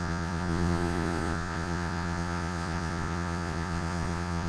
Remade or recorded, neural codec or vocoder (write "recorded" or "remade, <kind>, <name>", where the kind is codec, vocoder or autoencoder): remade, vocoder, Vocos